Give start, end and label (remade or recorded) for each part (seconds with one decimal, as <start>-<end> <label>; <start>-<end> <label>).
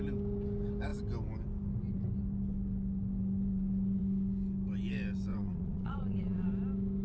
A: 0.0-5.3 recorded; 5.3-6.5 remade; 6.5-7.0 recorded